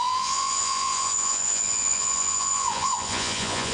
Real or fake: fake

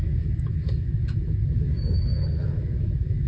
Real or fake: fake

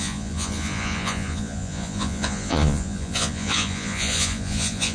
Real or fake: fake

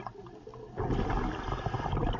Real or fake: real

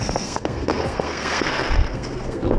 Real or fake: fake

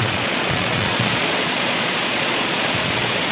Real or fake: fake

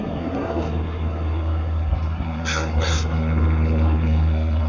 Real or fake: fake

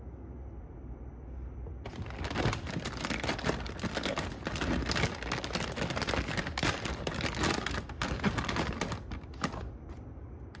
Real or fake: real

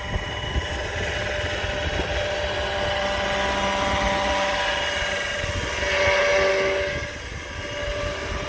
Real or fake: real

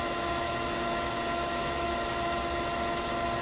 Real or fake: real